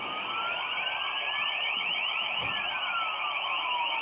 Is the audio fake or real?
real